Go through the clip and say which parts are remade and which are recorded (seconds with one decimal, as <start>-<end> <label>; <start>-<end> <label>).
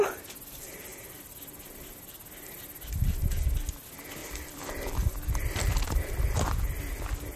0.0-0.9 recorded; 0.9-1.7 remade; 1.7-4.2 recorded; 4.2-5.1 remade; 5.1-7.4 recorded